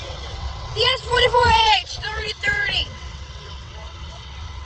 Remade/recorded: remade